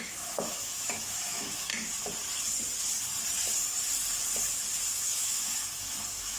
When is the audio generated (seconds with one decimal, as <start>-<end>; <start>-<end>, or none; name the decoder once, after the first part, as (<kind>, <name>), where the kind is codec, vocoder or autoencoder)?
0.0-1.7 (autoencoder, DAC-VAE); 4.9-6.4